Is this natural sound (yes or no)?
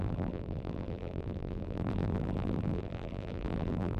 no